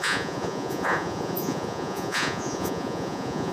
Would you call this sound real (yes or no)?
no